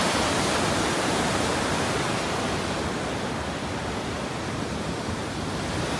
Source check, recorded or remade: recorded